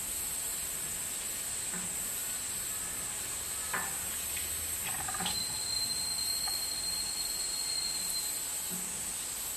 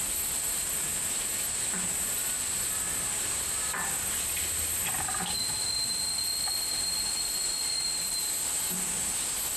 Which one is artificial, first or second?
second